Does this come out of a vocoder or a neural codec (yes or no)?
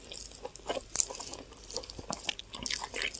no